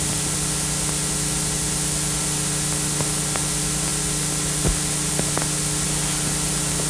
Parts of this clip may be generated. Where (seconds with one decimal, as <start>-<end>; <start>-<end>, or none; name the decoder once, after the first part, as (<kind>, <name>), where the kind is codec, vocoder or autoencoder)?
none